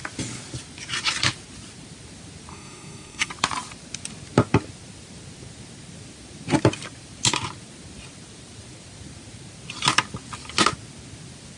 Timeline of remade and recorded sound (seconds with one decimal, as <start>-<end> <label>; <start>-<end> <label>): 0.0-2.5 recorded; 2.5-3.3 remade; 3.3-11.6 recorded